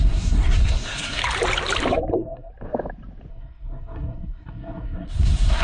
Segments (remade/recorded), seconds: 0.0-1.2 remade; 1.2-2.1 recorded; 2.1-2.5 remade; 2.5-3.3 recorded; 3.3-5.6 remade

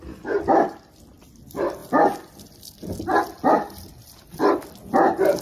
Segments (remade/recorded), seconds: 0.0-5.4 recorded

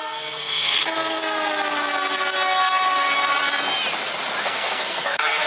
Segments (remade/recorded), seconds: 0.0-1.2 remade; 1.2-4.4 recorded; 4.4-5.5 remade

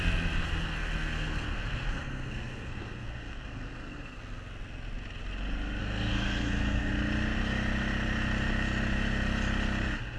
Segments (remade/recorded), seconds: 0.0-0.4 recorded; 0.4-4.2 remade; 4.2-5.8 recorded; 5.8-6.9 remade; 6.9-10.2 recorded

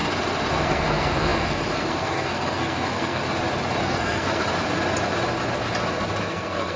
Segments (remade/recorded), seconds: 0.0-0.5 recorded; 0.5-3.2 remade; 3.2-3.8 recorded; 3.8-4.4 remade; 4.4-6.2 recorded; 6.2-6.8 remade